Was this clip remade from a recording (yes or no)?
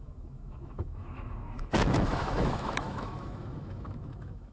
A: yes